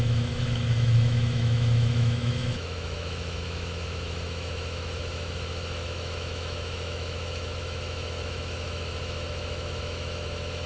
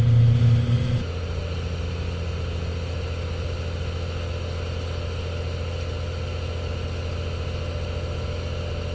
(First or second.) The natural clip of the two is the second